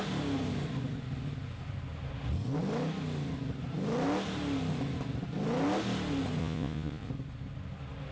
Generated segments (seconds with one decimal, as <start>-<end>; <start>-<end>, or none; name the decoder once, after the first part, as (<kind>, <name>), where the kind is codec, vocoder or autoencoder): 6.4-7.1 (vocoder, Vocos)